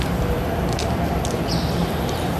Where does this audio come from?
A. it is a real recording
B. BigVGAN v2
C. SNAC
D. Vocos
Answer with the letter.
B